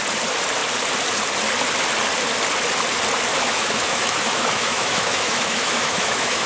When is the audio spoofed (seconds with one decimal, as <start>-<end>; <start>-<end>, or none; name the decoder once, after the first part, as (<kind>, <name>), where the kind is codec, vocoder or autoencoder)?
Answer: 3.3-6.5 (autoencoder, DAC-VAE)